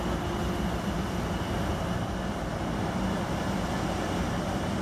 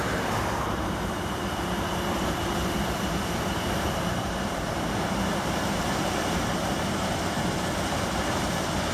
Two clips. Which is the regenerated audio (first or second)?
second